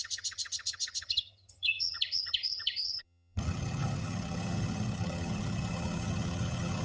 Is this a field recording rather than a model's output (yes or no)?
no